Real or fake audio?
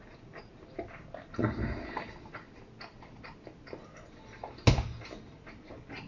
real